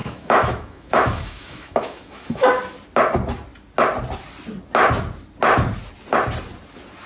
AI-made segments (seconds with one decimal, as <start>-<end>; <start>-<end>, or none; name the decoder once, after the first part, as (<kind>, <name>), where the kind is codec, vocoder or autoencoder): 0.0-2.5 (autoencoder, DAC-VAE)